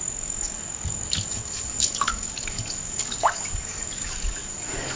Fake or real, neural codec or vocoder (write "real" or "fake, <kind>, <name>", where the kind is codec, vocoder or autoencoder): fake, codec, DAC